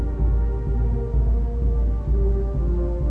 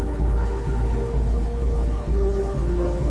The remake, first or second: second